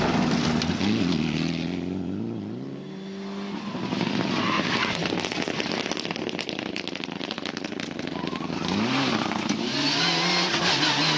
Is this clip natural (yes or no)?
yes